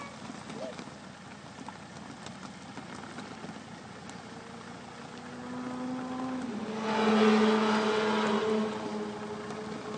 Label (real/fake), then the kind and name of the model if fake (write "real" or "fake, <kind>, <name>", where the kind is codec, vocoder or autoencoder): real